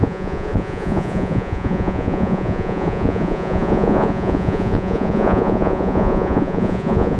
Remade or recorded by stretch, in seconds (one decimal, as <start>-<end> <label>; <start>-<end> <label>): 0.0-7.2 remade